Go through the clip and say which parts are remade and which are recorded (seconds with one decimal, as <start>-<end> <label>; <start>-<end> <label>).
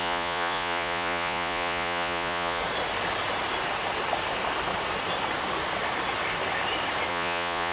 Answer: 0.0-2.6 remade; 2.6-7.1 recorded; 7.1-7.7 remade